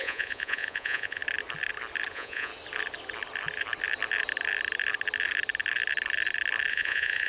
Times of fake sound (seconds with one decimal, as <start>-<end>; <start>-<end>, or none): 0.0-1.2; 2.1-2.5; 6.7-7.3